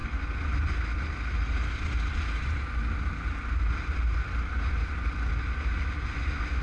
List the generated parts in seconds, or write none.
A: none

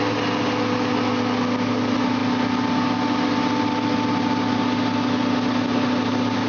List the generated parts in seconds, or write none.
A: none

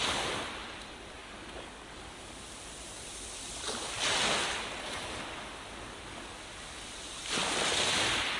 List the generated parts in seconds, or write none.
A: 1.2-2.3 (codec, DAC)